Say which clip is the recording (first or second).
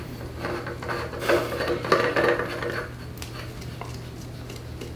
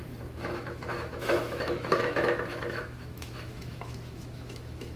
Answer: first